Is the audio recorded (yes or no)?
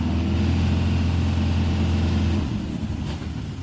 yes